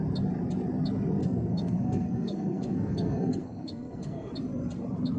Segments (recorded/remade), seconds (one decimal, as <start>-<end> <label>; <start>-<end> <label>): 0.0-1.2 recorded; 1.2-4.3 remade; 4.3-5.2 recorded

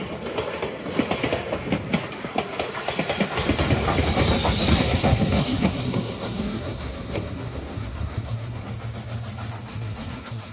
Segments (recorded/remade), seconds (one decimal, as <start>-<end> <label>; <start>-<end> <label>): 0.0-4.7 recorded; 4.7-8.6 remade; 8.6-9.7 recorded; 9.7-10.5 remade

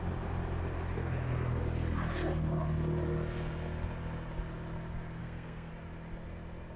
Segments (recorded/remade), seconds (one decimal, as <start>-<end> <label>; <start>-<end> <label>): 0.0-5.2 recorded; 5.2-5.7 remade; 5.7-6.8 recorded

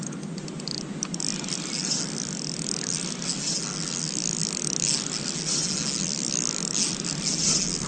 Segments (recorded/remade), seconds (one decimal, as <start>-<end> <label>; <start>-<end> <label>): 0.0-7.9 recorded

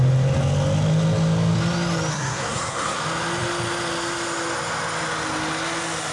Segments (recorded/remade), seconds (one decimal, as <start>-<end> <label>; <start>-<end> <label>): 0.0-2.1 recorded; 2.1-3.0 remade; 3.0-6.1 recorded

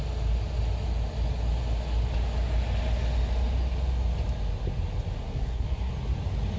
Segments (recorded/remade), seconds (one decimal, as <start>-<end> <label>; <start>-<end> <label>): 0.0-5.2 recorded; 5.2-5.9 remade; 5.9-6.6 recorded

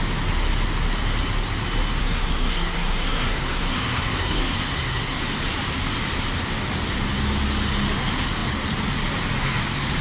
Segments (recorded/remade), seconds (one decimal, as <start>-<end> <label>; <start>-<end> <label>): 0.0-2.0 recorded; 2.0-5.2 remade; 5.2-10.0 recorded